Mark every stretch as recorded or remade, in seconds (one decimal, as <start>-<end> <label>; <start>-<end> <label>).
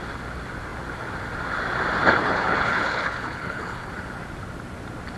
0.0-2.2 recorded; 2.2-3.9 remade; 3.9-5.2 recorded